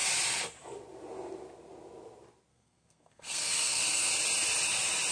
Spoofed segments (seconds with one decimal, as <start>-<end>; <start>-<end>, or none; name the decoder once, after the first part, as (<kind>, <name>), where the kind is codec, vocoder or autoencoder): 2.5-4.1 (codec, SNAC)